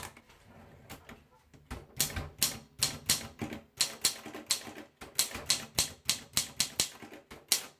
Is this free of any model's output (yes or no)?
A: yes